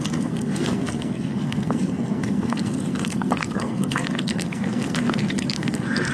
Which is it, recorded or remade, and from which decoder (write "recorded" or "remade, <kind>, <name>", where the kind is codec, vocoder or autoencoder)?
remade, codec, SNAC